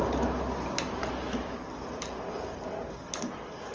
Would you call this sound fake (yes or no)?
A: no